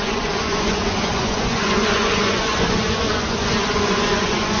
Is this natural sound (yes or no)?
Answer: no